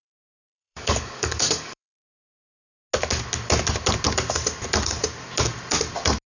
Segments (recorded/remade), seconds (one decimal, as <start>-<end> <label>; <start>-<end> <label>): 0.0-2.2 remade; 2.2-6.3 recorded